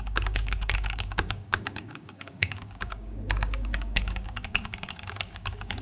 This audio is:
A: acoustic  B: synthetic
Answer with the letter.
B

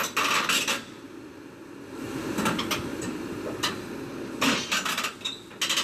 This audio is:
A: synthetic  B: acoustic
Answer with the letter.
B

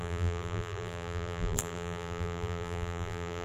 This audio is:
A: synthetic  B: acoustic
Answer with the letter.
A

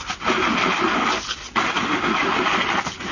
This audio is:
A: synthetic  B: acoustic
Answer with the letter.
B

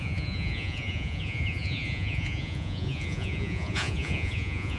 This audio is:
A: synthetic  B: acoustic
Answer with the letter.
A